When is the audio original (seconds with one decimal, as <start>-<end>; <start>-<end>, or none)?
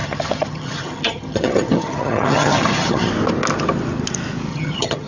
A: 3.1-4.5